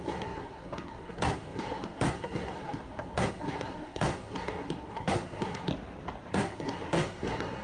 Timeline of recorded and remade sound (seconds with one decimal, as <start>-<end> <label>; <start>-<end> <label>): 0.0-5.7 remade; 5.7-6.3 recorded; 6.3-7.6 remade